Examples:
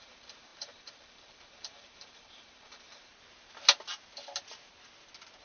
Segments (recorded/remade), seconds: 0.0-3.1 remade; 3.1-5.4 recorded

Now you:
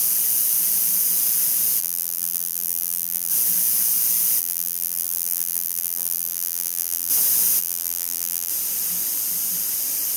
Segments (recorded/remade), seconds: 0.0-1.8 recorded; 1.8-3.3 remade; 3.3-4.4 recorded; 4.4-7.1 remade; 7.1-7.6 recorded; 7.6-8.5 remade; 8.5-10.2 recorded

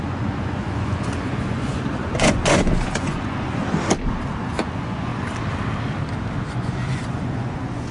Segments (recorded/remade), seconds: 0.0-3.6 remade; 3.6-4.4 recorded; 4.4-5.1 remade; 5.1-6.5 recorded; 6.5-7.9 remade

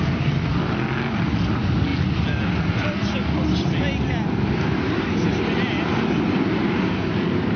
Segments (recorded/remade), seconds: 0.0-7.6 recorded

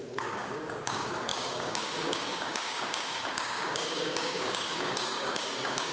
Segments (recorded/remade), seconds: 0.0-5.9 remade

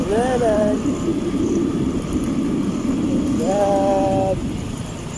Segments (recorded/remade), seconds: 0.0-1.1 recorded; 1.1-2.7 remade; 2.7-5.2 recorded

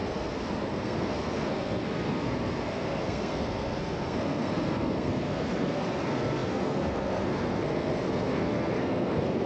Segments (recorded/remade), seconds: 0.0-9.5 remade